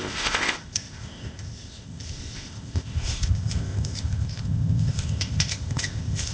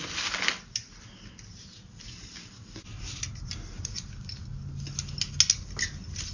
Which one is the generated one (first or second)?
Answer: first